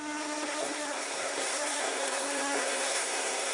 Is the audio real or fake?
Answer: fake